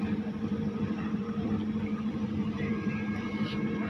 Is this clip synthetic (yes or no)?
yes